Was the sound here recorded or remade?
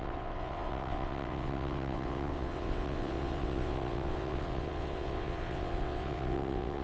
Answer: remade